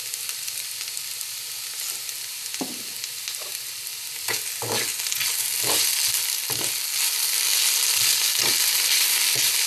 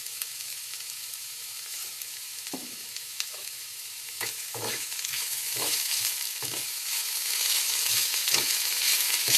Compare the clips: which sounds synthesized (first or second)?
second